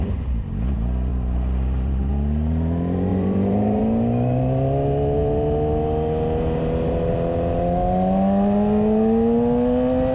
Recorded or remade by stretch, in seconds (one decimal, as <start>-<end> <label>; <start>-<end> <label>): 0.0-1.1 recorded; 1.1-2.1 remade; 2.1-3.1 recorded; 3.1-3.8 remade; 3.8-10.1 recorded